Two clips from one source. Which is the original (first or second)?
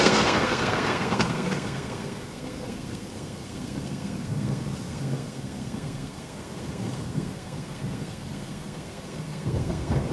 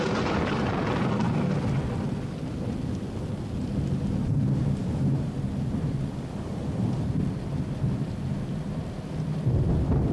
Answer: second